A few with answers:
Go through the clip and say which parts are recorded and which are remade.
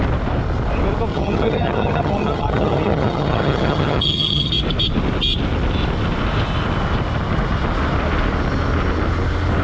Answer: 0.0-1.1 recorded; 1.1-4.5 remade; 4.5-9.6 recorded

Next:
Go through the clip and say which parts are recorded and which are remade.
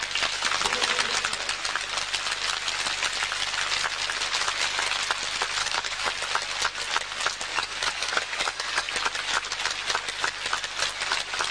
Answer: 0.0-5.6 recorded; 5.6-6.1 remade; 6.1-7.5 recorded; 7.5-8.9 remade; 8.9-11.5 recorded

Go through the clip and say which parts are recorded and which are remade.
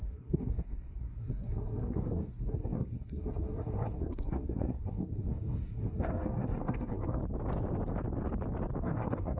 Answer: 0.0-7.2 remade; 7.2-8.8 recorded; 8.8-9.4 remade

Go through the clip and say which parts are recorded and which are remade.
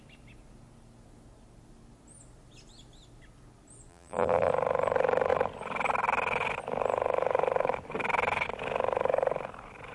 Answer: 0.0-3.9 recorded; 3.9-4.5 remade; 4.5-9.9 recorded